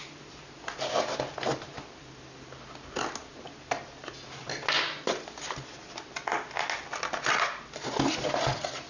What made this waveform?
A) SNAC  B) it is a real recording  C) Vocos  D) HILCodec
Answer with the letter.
B